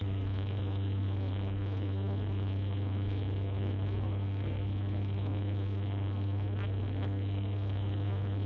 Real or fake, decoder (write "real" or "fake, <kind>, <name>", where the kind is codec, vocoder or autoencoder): fake, codec, SNAC